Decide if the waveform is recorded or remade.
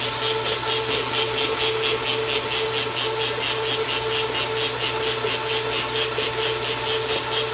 recorded